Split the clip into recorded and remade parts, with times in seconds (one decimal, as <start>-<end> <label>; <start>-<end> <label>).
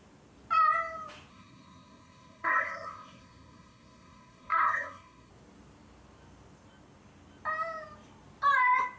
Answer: 0.0-1.3 recorded; 1.3-5.3 remade; 5.3-9.0 recorded